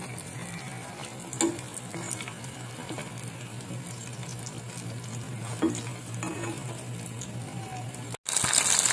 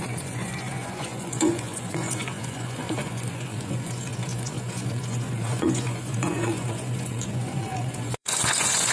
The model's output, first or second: second